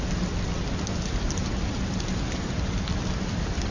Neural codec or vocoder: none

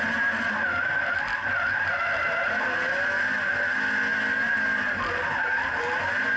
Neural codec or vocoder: none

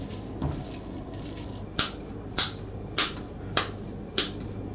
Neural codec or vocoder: none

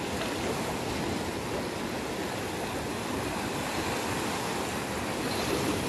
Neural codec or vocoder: none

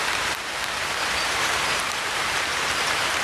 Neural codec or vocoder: vocoder, BigVGAN v2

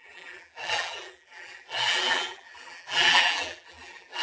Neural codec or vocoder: vocoder, BigVGAN v2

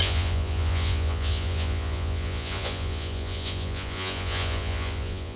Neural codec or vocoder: vocoder, Vocos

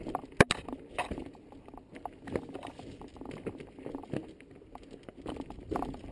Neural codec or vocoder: none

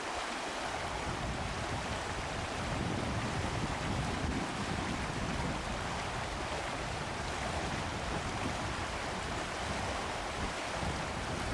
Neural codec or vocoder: vocoder, BigVGAN v2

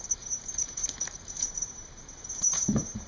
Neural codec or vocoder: vocoder, BigVGAN v2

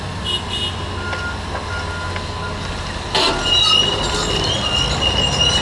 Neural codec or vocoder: none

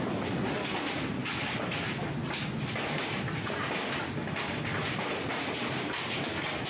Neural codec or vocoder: none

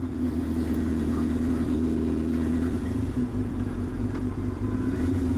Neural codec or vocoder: vocoder, Vocos